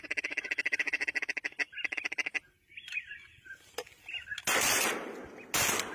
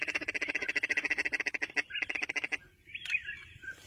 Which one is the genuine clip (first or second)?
first